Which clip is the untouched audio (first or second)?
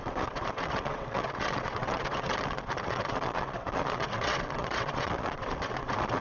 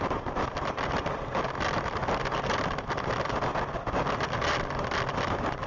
second